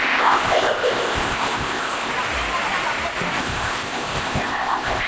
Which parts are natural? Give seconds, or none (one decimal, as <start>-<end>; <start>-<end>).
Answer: 2.1-3.4